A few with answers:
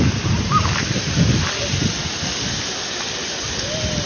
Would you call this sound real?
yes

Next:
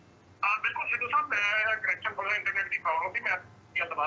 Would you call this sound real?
yes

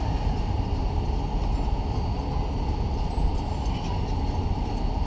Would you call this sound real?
yes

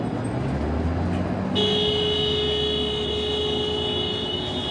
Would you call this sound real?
yes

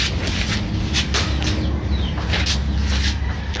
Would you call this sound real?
yes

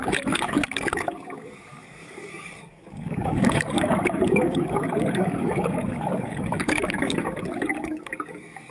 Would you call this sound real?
no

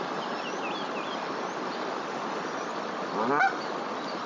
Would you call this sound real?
yes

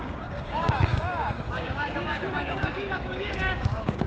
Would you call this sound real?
no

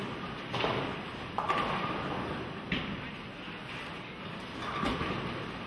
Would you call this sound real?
yes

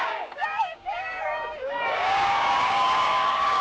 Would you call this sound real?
no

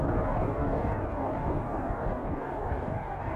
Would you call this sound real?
no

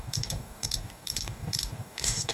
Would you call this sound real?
no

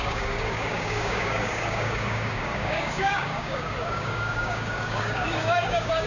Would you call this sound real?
no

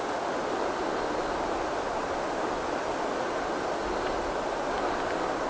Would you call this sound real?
yes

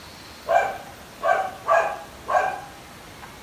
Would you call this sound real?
yes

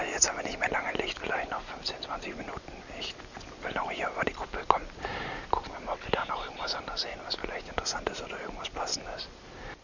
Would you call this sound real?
yes